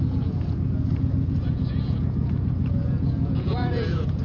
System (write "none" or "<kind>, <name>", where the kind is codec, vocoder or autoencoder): vocoder, Vocos